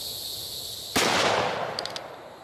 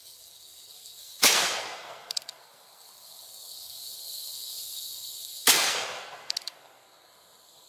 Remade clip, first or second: second